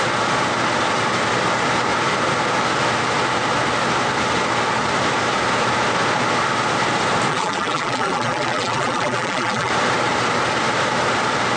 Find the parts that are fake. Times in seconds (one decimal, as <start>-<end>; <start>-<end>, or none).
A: 7.3-9.7